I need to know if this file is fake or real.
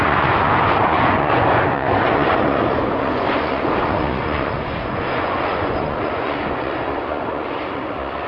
fake